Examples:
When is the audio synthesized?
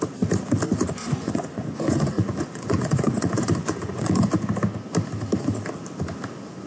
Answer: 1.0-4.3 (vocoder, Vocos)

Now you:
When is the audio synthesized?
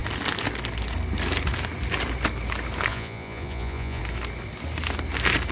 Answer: 2.9-4.0 (vocoder, Vocos)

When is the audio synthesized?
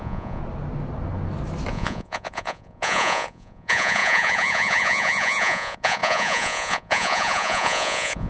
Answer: 0.0-0.4 (vocoder, Vocos); 1.7-8.3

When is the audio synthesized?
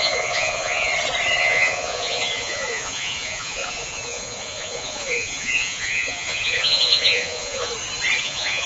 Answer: 0.0-0.9 (vocoder, Vocos); 1.4-7.7; 8.2-8.7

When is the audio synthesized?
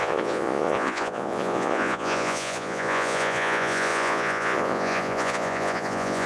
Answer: 0.0-6.3 (vocoder, Vocos)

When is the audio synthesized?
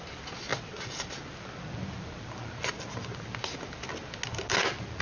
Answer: none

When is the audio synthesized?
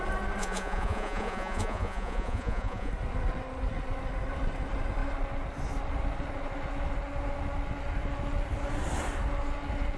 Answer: 0.4-2.9 (vocoder, Vocos)